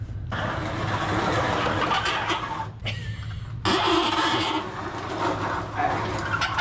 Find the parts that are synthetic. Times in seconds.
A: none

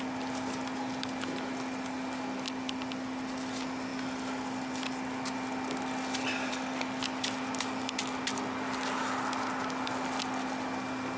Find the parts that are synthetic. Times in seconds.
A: none

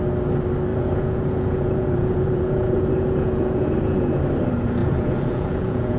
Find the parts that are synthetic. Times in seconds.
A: 0.7-4.2; 4.8-6.0

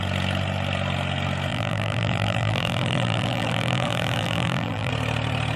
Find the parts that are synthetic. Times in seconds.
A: 1.5-4.9